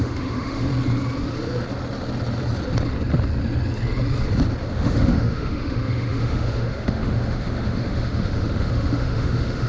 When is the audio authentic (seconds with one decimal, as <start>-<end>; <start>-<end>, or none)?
0.7-4.6